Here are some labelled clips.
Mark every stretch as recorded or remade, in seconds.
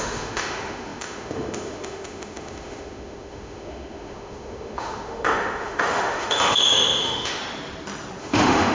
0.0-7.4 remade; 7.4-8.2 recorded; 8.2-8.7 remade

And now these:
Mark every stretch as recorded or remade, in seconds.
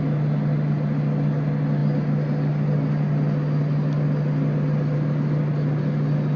0.0-6.4 recorded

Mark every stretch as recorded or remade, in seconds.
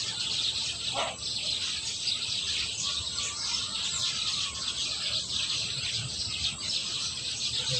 0.0-7.8 recorded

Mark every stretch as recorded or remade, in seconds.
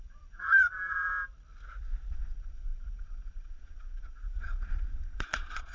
0.0-1.1 remade; 1.1-2.1 recorded; 2.1-5.7 remade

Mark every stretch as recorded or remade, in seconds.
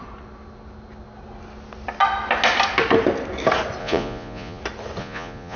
0.0-3.8 recorded; 3.8-4.6 remade; 4.6-5.0 recorded; 5.0-5.6 remade